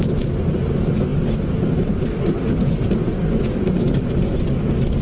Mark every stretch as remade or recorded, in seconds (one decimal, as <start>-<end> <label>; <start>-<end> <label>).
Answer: 0.0-5.0 recorded